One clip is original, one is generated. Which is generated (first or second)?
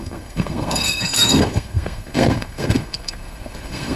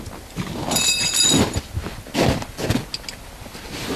first